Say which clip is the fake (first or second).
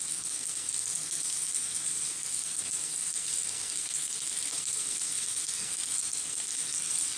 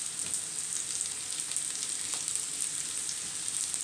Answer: first